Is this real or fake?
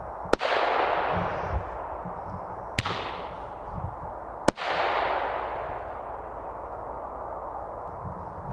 real